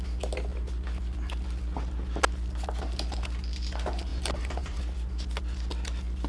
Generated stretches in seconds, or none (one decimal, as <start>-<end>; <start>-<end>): 4.1-4.8